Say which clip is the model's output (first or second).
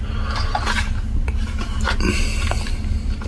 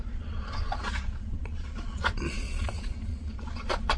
second